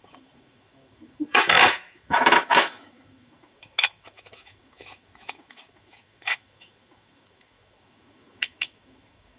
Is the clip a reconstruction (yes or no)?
yes